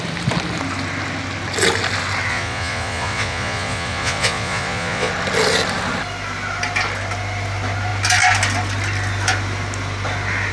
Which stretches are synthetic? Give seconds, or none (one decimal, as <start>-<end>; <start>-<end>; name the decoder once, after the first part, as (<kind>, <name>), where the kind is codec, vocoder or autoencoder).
2.3-5.1 (vocoder, Vocos)